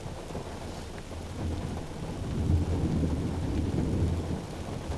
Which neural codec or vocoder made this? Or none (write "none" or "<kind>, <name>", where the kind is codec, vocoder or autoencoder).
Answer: none